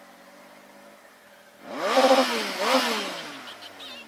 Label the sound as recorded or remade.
recorded